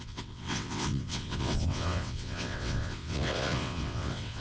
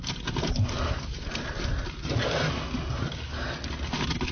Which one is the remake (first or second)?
first